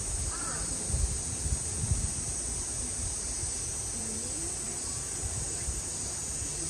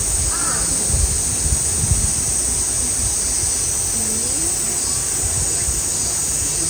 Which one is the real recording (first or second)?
second